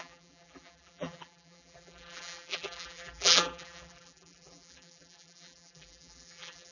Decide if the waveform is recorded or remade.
remade